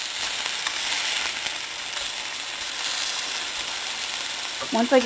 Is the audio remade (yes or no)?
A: no